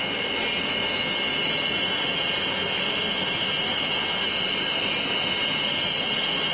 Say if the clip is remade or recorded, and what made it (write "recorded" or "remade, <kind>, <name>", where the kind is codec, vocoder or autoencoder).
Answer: recorded